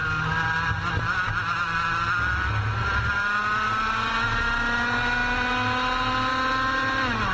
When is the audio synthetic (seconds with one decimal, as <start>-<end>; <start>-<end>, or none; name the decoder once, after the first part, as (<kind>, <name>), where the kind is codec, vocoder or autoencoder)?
none